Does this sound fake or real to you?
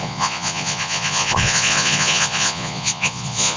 fake